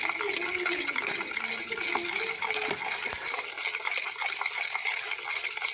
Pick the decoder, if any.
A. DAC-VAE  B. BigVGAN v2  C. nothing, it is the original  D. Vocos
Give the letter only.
C